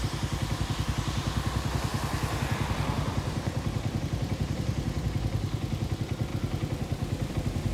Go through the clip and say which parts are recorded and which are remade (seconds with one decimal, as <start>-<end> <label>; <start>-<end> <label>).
0.0-7.7 recorded